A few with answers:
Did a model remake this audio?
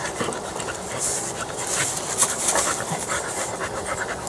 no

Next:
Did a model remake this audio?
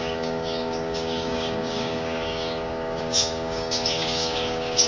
yes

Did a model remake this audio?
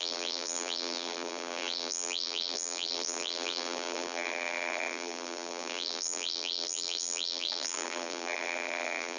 yes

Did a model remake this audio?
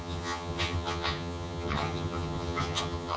yes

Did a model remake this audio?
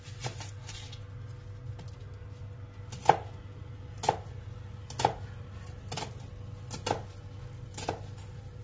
no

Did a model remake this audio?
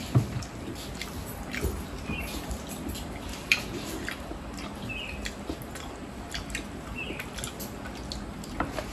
no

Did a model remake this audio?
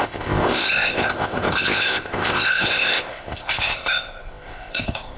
yes